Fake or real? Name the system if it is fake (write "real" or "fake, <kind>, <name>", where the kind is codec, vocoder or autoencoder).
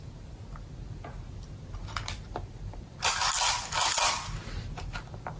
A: real